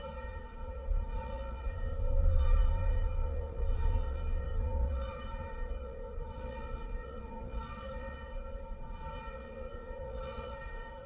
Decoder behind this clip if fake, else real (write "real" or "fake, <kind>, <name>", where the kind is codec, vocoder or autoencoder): fake, vocoder, Vocos